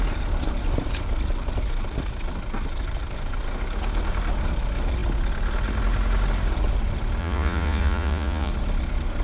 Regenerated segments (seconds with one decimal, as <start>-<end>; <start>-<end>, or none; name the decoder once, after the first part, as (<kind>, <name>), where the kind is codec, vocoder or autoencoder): 7.2-8.5 (vocoder, Vocos)